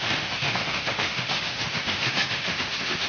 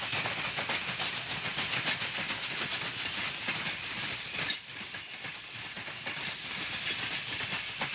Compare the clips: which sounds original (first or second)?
second